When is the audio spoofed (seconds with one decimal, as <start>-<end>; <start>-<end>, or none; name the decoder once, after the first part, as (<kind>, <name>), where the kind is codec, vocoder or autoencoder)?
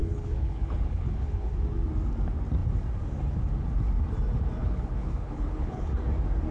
0.0-1.5 (codec, HILCodec); 4.6-5.9